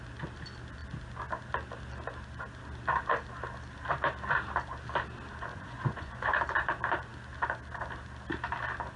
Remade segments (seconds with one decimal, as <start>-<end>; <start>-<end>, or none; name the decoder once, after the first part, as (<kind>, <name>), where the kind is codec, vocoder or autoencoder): 5.5-6.4 (vocoder, Vocos)